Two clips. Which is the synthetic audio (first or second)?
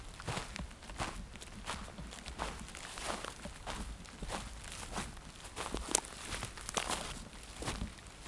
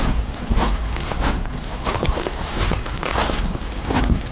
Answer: second